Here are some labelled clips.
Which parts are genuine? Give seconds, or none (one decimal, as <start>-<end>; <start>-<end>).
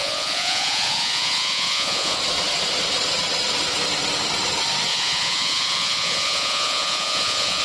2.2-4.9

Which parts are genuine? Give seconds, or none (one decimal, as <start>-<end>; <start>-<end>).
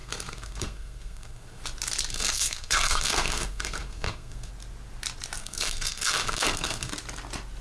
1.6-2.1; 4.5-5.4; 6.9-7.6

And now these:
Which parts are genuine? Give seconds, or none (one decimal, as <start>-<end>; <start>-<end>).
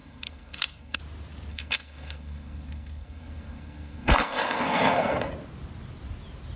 1.0-1.5; 5.3-6.6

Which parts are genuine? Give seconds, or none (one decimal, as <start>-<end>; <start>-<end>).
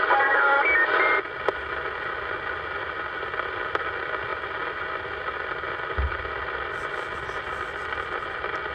0.0-8.7